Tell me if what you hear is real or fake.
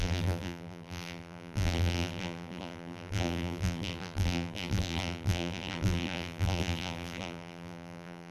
fake